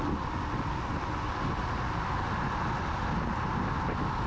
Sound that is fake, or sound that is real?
real